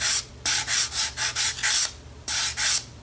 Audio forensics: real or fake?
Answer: fake